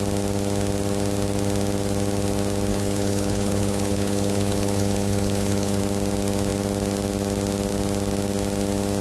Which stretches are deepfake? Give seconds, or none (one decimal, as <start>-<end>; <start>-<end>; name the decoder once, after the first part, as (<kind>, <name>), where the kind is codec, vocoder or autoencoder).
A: 2.7-5.8 (codec, HILCodec)